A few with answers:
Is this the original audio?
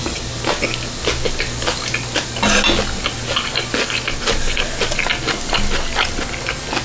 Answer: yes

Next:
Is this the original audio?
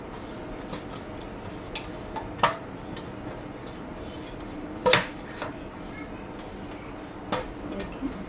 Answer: yes